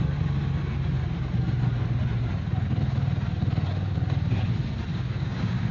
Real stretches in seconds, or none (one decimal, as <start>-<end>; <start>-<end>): 0.0-4.9